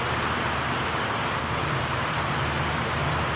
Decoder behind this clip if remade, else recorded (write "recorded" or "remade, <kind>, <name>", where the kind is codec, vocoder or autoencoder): recorded